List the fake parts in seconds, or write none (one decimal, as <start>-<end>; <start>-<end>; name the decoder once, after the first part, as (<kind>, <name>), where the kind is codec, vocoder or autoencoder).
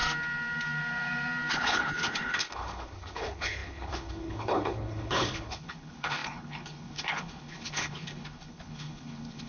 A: 1.5-9.5 (codec, HILCodec)